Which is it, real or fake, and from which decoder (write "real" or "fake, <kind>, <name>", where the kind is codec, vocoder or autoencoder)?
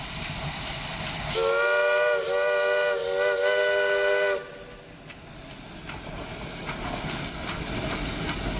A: real